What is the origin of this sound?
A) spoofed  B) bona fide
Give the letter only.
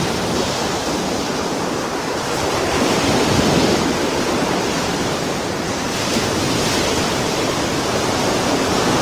A